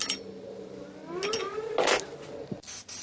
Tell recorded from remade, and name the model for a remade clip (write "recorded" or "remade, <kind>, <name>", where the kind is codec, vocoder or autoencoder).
recorded